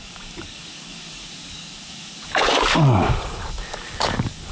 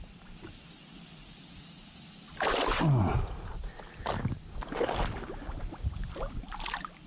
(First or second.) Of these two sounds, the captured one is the second